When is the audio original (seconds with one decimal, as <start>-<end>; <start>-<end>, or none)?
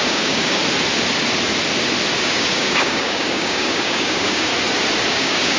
0.6-2.2; 4.5-5.1